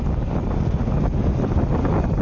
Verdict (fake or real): real